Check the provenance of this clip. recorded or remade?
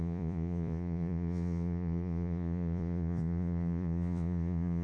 remade